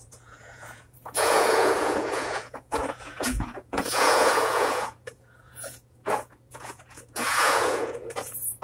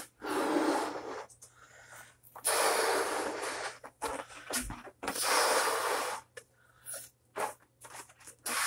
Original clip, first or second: second